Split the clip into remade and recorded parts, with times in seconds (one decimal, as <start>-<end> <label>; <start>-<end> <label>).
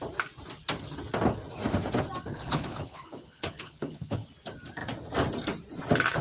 0.0-2.3 recorded; 2.3-4.3 remade; 4.3-6.2 recorded